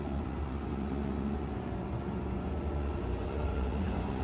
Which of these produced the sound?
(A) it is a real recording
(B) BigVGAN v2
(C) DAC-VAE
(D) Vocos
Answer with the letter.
D